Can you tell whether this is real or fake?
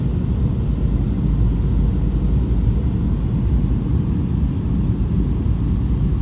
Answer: real